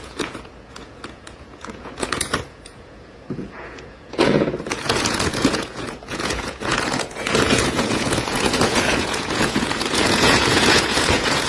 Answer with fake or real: fake